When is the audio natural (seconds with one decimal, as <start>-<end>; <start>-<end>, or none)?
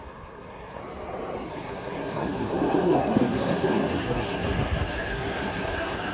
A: 0.8-1.5